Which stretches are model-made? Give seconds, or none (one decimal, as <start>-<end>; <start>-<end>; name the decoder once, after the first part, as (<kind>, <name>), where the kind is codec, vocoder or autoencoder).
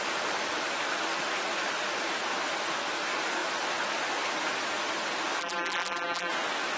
5.4-6.3 (vocoder, BigVGAN v2)